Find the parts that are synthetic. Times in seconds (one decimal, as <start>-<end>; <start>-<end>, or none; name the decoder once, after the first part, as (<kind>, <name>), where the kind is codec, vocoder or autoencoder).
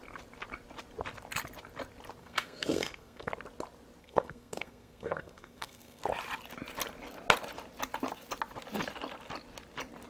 2.2-3.3 (codec, SNAC); 4.0-6.0